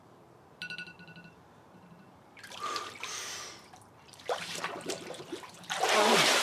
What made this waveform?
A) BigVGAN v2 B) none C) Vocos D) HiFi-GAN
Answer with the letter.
A